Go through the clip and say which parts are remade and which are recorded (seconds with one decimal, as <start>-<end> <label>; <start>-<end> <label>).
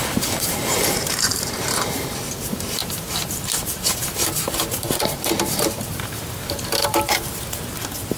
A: 0.0-8.2 remade